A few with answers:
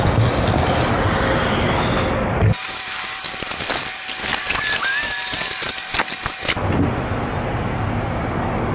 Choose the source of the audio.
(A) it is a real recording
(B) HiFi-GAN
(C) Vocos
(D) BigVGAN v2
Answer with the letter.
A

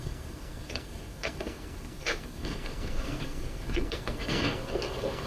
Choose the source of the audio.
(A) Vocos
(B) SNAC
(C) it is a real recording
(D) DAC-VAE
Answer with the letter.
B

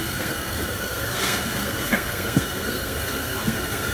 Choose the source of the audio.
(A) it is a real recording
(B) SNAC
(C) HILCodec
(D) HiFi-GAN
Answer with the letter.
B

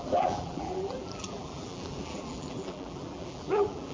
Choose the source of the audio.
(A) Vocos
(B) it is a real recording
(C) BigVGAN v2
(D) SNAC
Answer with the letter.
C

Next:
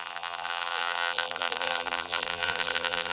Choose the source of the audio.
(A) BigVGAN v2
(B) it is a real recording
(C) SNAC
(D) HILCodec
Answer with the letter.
A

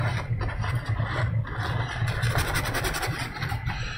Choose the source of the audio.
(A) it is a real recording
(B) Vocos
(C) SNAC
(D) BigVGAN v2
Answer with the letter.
A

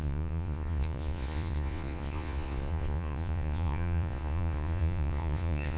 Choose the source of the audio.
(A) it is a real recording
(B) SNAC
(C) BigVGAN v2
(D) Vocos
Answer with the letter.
D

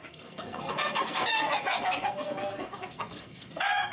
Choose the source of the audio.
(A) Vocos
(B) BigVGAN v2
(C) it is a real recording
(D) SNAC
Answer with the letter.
D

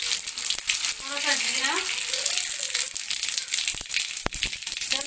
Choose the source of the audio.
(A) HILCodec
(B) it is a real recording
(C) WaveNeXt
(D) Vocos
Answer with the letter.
B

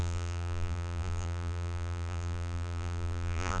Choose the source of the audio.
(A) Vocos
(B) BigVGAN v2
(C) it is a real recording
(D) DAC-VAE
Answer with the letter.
B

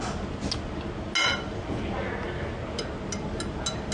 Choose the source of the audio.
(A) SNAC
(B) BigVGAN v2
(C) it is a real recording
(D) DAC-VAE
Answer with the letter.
C